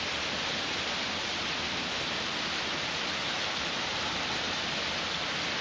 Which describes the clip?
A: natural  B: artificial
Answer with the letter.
A